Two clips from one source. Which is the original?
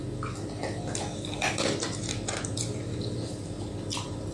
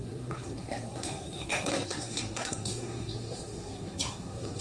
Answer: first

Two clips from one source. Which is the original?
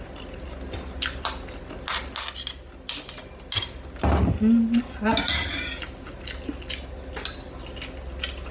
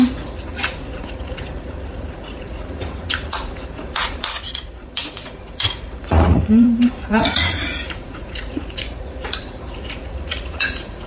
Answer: first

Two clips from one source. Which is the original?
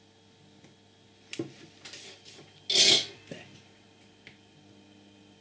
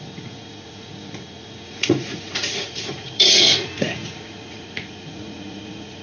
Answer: first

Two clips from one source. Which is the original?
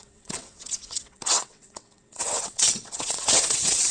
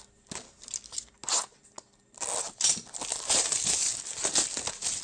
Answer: second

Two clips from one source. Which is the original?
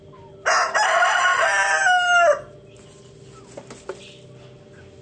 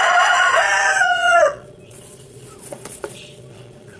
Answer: first